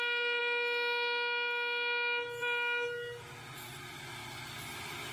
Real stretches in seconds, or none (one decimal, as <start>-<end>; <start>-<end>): 0.0-5.1